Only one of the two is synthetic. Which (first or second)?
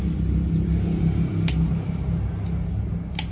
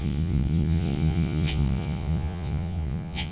second